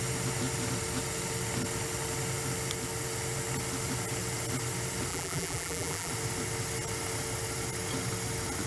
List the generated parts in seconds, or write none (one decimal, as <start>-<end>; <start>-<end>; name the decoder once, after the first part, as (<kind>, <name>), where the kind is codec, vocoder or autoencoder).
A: 5.1-6.1 (vocoder, BigVGAN v2)